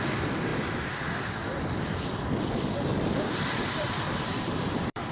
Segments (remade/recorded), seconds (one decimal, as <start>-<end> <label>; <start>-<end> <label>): 0.0-2.9 recorded; 2.9-5.1 remade